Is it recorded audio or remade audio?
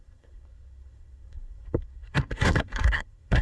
remade